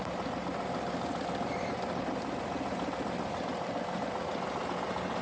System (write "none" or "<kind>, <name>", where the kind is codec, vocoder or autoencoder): none